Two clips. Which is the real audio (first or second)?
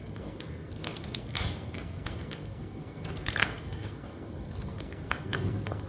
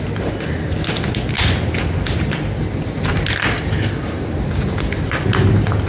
second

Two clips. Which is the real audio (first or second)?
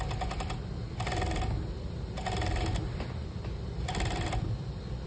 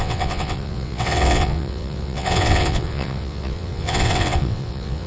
first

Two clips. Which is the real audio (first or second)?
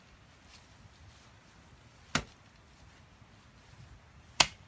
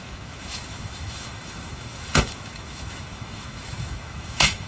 first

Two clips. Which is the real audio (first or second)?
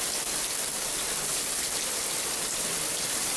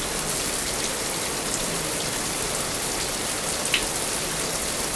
second